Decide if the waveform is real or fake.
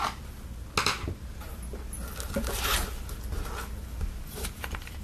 real